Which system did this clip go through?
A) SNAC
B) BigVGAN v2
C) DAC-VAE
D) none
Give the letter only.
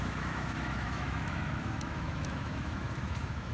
C